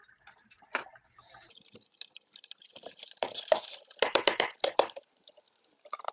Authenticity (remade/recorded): remade